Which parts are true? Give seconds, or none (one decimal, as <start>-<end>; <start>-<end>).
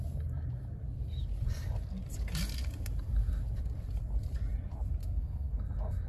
0.0-5.0; 5.6-6.1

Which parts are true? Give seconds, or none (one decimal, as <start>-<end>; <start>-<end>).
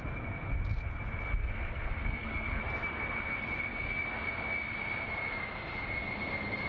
0.0-1.4; 2.6-6.7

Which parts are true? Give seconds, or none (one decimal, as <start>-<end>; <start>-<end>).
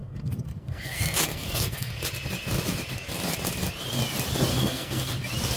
2.0-4.5; 5.1-5.6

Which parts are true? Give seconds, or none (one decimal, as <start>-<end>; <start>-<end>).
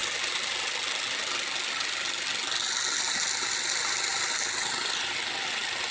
0.0-5.9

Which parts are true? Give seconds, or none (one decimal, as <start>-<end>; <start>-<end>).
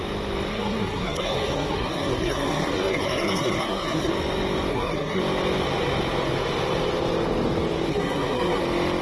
0.0-0.5; 4.1-4.7; 5.2-7.9; 8.6-9.0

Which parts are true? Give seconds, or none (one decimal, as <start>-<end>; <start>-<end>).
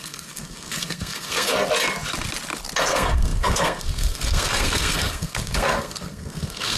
1.5-2.8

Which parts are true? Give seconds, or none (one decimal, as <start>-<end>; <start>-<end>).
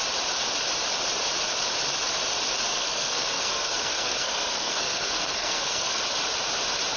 0.0-2.7; 6.0-7.0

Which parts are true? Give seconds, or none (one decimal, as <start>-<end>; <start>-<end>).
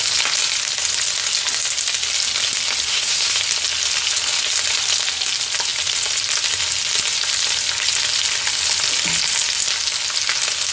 0.0-2.9; 3.4-10.7